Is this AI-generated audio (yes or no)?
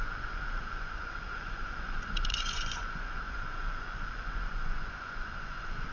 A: yes